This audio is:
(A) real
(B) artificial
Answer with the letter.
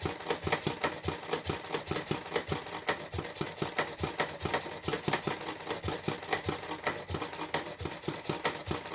A